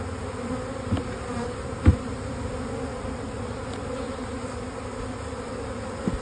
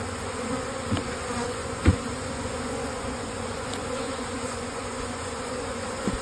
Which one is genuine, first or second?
first